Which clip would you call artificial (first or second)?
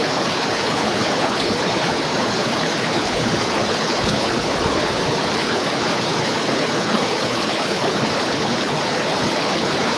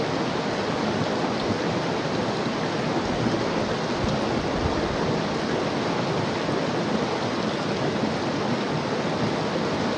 first